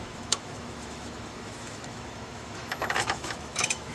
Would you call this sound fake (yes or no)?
yes